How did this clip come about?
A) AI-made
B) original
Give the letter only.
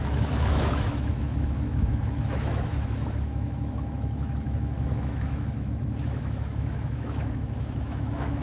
A